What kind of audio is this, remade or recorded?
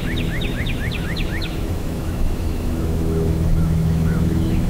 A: remade